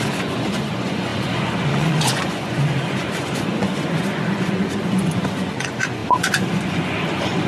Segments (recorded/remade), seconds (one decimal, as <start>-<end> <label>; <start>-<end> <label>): 0.0-7.5 remade